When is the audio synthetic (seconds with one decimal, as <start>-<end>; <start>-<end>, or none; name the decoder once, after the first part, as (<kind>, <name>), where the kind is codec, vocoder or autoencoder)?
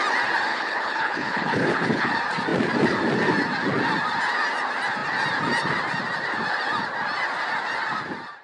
0.5-2.1 (codec, HILCodec)